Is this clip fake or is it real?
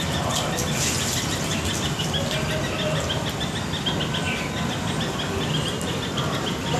real